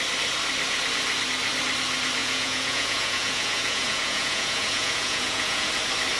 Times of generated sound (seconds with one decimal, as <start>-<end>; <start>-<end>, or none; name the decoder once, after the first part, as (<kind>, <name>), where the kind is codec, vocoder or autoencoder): 2.2-5.7 (vocoder, Vocos)